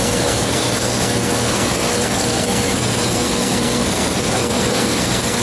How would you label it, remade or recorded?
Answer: remade